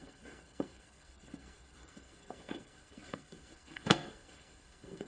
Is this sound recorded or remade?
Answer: remade